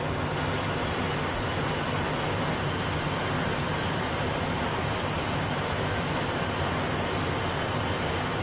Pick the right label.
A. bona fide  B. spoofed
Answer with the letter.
A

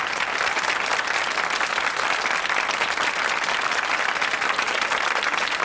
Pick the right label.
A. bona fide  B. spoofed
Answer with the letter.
A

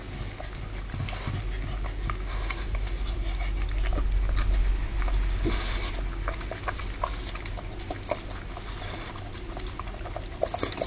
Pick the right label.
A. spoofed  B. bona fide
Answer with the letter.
B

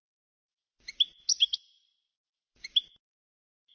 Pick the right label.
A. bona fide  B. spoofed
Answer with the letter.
A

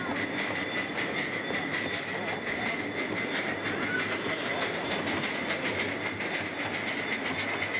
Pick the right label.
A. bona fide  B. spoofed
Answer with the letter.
A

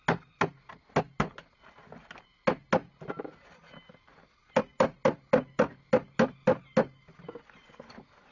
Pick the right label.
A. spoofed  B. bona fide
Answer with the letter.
B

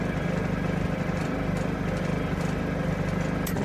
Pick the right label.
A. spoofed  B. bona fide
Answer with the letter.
B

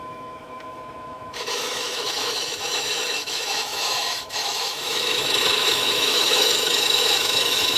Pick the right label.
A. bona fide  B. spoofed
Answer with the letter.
B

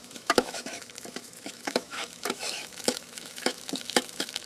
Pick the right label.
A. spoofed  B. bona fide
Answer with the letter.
A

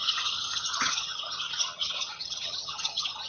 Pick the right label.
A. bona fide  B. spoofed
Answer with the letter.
B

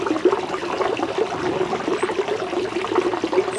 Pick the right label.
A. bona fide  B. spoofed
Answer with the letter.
A